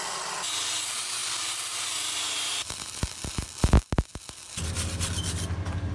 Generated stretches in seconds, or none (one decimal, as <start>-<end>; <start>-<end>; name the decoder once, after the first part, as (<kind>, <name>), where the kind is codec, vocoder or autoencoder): 1.2-3.1 (vocoder, BigVGAN v2)